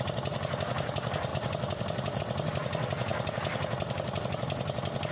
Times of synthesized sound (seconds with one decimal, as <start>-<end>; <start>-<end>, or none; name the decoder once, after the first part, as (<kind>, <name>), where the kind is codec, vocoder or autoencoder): 1.3-2.2 (vocoder, BigVGAN v2)

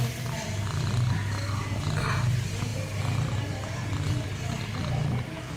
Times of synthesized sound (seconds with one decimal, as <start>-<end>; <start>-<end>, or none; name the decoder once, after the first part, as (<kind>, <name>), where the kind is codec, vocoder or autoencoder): none

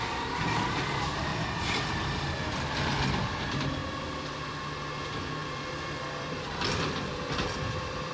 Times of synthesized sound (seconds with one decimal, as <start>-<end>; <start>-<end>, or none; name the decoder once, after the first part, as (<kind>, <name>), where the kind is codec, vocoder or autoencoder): 1.3-1.9 (vocoder, BigVGAN v2); 5.4-8.1